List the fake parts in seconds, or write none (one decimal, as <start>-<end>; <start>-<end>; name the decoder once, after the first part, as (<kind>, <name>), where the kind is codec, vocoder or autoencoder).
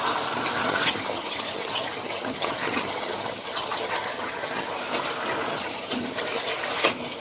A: 0.6-4.7 (vocoder, HiFi-GAN); 5.5-6.5